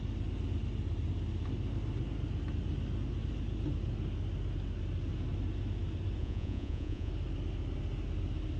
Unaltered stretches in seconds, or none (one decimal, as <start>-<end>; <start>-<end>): 0.0-6.2; 7.1-8.6